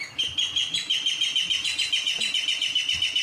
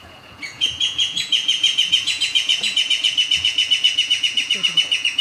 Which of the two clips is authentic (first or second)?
first